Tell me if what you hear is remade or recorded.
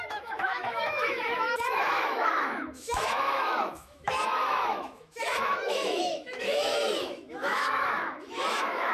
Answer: remade